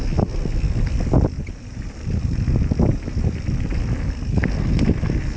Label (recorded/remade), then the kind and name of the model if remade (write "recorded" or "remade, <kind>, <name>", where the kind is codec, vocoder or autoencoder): recorded